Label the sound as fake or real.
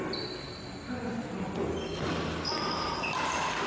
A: real